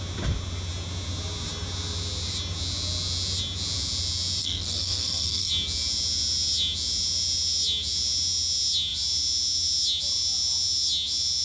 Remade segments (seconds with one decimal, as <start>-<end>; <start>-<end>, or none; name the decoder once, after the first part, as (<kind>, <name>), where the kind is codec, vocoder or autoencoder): 4.4-5.5 (codec, SNAC)